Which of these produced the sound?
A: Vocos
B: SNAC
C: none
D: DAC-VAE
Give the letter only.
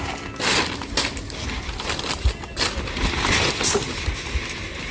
C